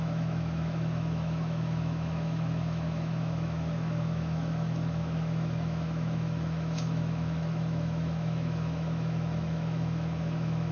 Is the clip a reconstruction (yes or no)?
yes